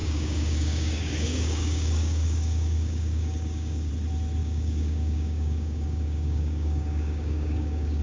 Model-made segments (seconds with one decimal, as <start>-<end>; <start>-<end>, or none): 0.0-3.9; 4.4-8.0